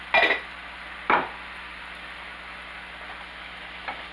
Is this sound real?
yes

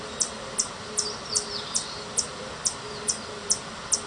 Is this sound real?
yes